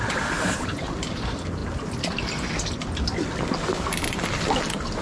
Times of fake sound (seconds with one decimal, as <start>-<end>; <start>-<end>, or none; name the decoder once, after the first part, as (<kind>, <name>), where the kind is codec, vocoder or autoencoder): none